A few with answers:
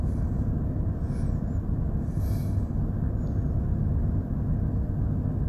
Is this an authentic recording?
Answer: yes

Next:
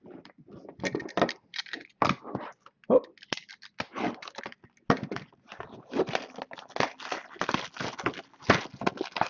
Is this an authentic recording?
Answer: yes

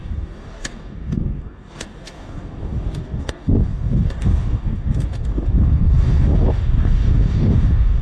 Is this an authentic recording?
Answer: no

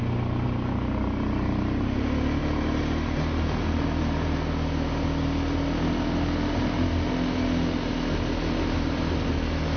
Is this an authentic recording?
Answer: yes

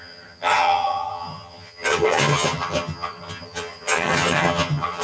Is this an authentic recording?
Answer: no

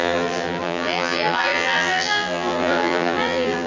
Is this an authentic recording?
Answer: no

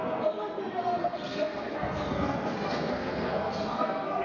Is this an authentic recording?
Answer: no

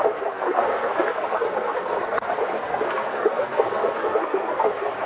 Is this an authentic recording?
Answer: no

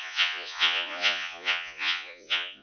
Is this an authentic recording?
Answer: no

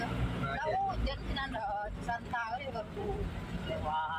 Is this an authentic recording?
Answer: yes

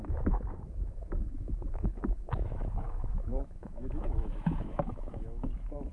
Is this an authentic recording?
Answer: no